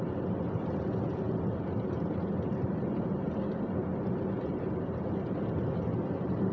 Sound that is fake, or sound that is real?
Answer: real